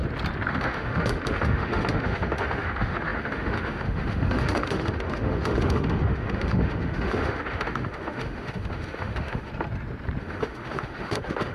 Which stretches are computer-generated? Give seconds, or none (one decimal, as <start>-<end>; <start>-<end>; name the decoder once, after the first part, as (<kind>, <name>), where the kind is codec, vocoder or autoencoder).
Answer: 0.5-9.5 (autoencoder, DAC-VAE); 10.2-11.5